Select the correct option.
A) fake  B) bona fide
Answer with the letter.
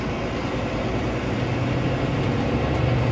B